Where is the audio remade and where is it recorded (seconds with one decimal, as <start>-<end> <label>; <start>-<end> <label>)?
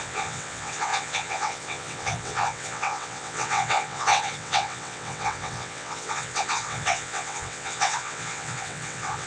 0.0-9.3 remade